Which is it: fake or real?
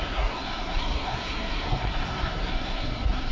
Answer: fake